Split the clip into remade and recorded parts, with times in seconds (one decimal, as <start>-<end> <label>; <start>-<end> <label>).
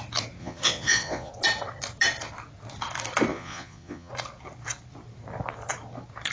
0.0-0.4 recorded; 0.4-1.3 remade; 1.3-3.3 recorded; 3.3-4.1 remade; 4.1-6.3 recorded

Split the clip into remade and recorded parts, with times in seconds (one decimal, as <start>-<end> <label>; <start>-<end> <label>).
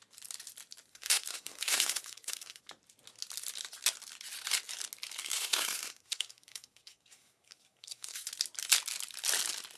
0.0-0.9 recorded; 0.9-2.6 remade; 2.6-5.2 recorded; 5.2-8.3 remade; 8.3-9.8 recorded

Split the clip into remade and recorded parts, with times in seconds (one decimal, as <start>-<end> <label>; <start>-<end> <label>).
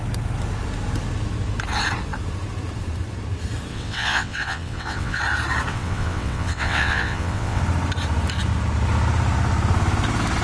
0.0-3.7 recorded; 3.7-5.2 remade; 5.2-5.7 recorded; 5.7-7.6 remade; 7.6-10.4 recorded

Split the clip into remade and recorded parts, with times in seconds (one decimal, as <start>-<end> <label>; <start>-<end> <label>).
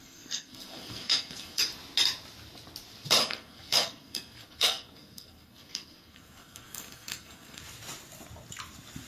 0.0-1.6 remade; 1.6-3.2 recorded; 3.2-7.6 remade; 7.6-9.1 recorded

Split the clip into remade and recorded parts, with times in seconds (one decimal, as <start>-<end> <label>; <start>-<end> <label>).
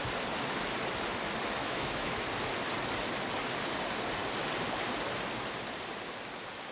0.0-1.6 recorded; 1.6-2.2 remade; 2.2-6.7 recorded